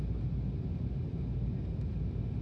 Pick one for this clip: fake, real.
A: real